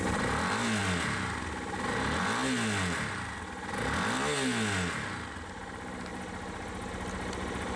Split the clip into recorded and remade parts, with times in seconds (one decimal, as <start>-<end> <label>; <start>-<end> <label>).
0.0-7.8 recorded